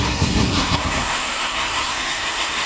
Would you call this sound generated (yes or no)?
yes